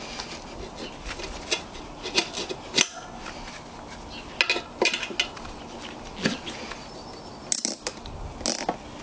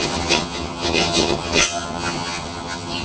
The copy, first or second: second